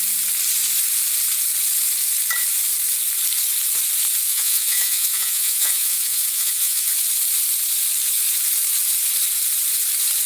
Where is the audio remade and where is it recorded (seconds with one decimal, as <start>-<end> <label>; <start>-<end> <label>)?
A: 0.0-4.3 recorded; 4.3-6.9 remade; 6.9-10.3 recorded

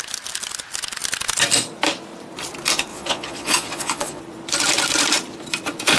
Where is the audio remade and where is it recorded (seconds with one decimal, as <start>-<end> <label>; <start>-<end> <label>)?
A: 0.0-2.9 recorded; 2.9-4.2 remade; 4.2-6.0 recorded

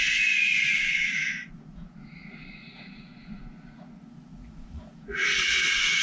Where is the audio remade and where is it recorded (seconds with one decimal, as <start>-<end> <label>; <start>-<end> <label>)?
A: 0.0-6.0 remade

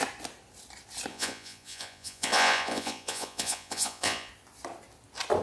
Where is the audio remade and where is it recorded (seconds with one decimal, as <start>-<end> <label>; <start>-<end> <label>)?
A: 0.0-1.1 recorded; 1.1-4.3 remade; 4.3-5.4 recorded

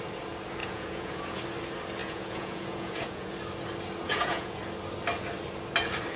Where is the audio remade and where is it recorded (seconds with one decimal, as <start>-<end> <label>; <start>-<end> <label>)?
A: 0.0-0.6 recorded; 0.6-1.4 remade; 1.4-2.0 recorded; 2.0-3.3 remade; 3.3-4.0 recorded; 4.0-4.6 remade; 4.6-6.2 recorded

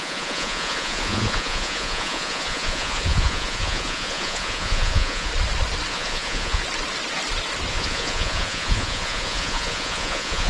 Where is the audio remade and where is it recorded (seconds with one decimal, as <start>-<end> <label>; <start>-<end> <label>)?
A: 0.0-5.3 remade; 5.3-5.9 recorded; 5.9-6.6 remade; 6.6-7.7 recorded; 7.7-10.5 remade